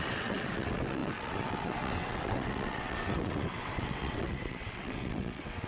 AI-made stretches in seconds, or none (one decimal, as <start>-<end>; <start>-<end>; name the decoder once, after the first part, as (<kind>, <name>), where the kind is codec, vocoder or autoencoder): 0.0-5.7 (vocoder, WaveNeXt)